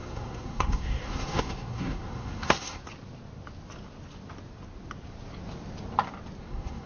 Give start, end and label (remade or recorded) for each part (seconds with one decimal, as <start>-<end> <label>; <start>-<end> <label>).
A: 0.0-2.8 remade; 2.8-6.4 recorded; 6.4-6.9 remade